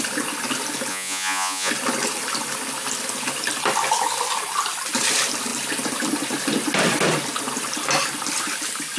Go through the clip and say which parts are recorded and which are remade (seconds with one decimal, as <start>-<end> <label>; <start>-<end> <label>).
0.0-0.9 recorded; 0.9-1.7 remade; 1.7-9.0 recorded